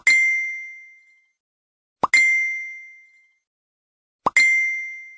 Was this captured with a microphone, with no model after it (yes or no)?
yes